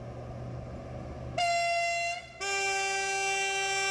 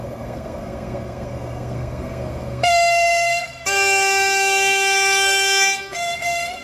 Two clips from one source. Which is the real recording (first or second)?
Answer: first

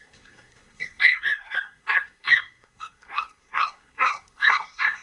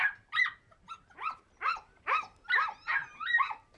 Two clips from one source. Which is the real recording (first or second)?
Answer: second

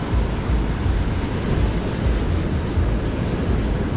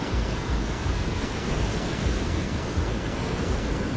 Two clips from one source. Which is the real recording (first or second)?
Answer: first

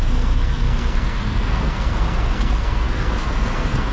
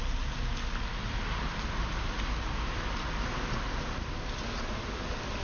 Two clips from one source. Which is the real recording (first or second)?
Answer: second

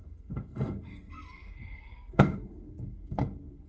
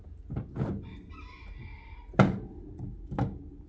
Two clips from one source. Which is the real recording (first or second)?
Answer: second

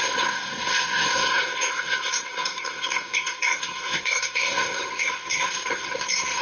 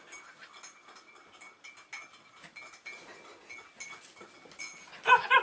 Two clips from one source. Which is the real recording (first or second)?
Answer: second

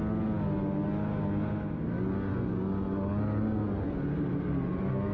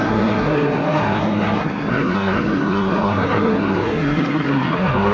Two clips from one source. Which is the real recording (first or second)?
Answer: first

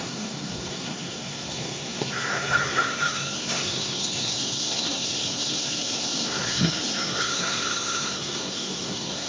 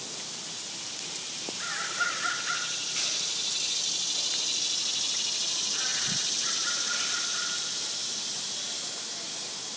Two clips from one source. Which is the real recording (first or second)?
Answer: second